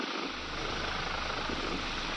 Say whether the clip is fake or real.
real